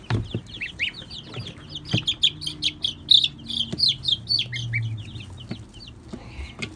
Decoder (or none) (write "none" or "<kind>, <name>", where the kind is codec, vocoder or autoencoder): none